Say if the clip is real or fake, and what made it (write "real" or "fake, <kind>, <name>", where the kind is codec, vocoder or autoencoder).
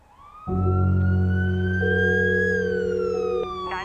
real